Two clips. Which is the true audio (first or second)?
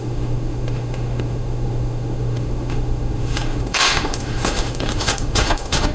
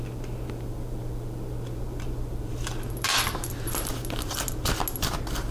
second